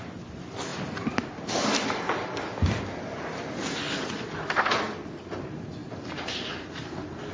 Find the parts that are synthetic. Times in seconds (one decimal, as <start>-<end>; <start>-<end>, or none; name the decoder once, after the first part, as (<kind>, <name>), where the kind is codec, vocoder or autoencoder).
none